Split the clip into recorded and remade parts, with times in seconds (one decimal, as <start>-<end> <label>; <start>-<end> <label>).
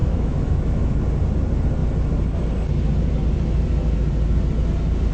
0.0-1.0 remade; 1.0-5.1 recorded